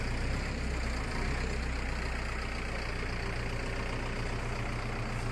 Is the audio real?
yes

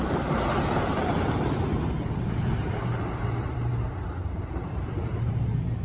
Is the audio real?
no